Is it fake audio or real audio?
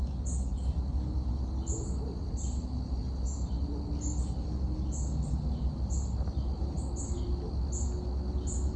real